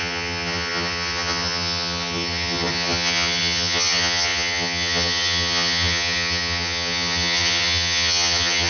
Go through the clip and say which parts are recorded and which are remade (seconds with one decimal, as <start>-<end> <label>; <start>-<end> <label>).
0.0-8.7 remade